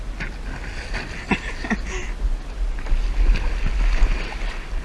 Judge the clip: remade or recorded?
recorded